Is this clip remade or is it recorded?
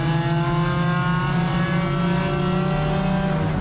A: recorded